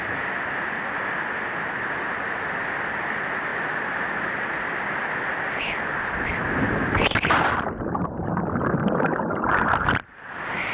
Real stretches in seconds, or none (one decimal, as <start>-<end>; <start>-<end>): 0.0-10.7